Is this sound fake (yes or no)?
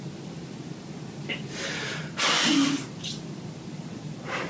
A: no